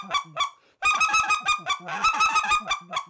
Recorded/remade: recorded